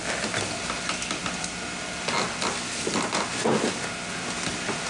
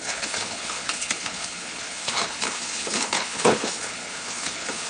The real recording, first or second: first